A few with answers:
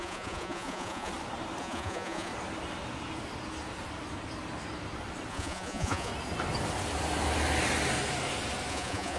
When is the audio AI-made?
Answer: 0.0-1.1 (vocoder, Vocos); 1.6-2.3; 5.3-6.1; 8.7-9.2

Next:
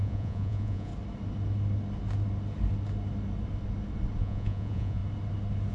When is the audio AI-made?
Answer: 0.0-0.9 (vocoder, Vocos); 4.2-5.0

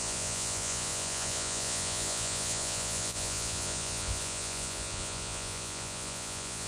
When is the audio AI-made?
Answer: 0.0-6.7 (vocoder, Vocos)

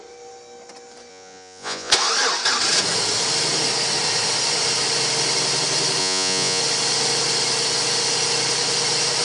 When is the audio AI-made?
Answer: 1.1-1.9 (vocoder, Vocos); 6.0-6.6

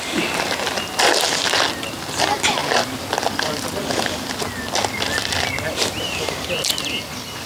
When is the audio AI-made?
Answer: none

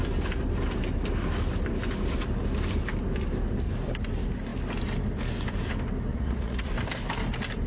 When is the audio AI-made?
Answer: 6.1-6.7 (vocoder, Vocos)

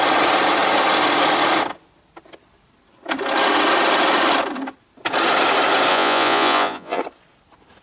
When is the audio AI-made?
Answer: 5.9-7.0 (vocoder, Vocos)

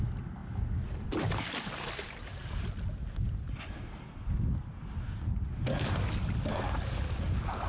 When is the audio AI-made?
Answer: none